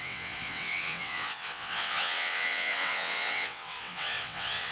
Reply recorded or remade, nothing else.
remade